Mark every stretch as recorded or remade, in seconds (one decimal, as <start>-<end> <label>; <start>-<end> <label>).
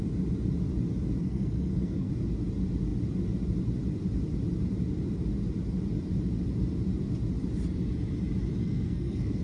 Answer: 0.0-1.2 recorded; 1.2-2.1 remade; 2.1-8.6 recorded; 8.6-9.4 remade